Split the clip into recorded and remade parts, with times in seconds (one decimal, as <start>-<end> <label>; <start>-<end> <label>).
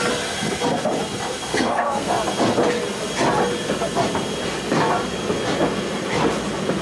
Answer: 0.0-1.5 recorded; 1.5-2.1 remade; 2.1-6.8 recorded